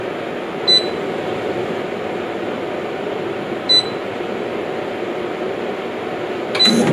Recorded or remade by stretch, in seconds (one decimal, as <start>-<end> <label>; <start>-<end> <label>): 0.0-6.9 recorded